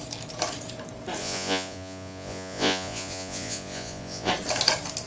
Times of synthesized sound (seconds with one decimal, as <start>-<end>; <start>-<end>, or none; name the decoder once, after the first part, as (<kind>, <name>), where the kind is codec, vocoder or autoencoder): 1.2-4.3 (vocoder, Vocos)